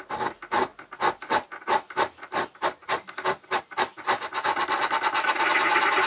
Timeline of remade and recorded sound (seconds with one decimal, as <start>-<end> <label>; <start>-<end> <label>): 0.0-6.1 recorded